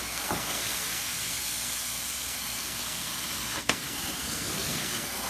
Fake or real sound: fake